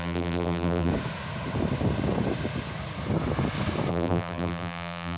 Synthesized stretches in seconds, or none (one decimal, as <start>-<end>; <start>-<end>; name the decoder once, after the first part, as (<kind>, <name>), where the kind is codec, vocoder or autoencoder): 0.0-0.9 (vocoder, BigVGAN v2); 3.9-5.2